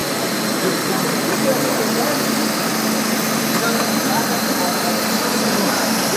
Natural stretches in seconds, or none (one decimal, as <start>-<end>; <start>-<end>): 1.4-6.2